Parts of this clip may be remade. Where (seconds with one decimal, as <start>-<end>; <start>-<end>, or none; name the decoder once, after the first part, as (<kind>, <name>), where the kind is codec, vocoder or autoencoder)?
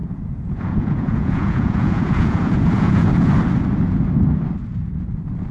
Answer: 0.0-3.3 (vocoder, Vocos)